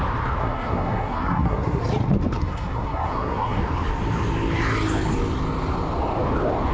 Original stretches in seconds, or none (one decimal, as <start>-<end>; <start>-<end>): 0.0-0.4; 1.8-2.4; 3.6-6.7